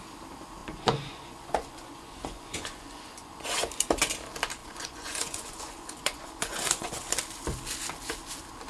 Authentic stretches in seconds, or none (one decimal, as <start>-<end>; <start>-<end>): 0.0-0.6; 3.7-4.6; 7.1-8.7